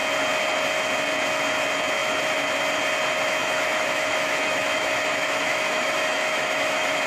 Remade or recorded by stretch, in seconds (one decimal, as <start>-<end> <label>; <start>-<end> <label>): 0.0-3.4 recorded; 3.4-7.1 remade